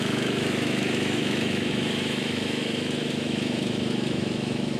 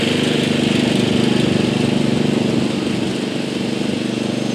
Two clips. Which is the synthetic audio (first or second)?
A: first